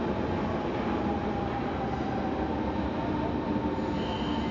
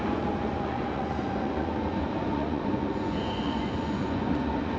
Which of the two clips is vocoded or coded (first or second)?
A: second